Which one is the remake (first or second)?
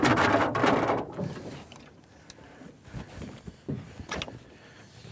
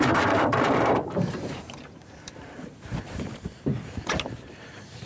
second